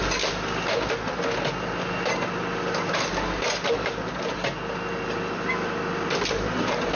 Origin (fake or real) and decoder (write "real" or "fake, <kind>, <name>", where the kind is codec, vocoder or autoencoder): real